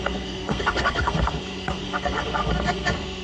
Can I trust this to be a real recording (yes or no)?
no